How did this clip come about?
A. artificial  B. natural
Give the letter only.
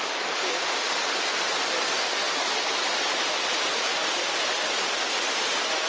B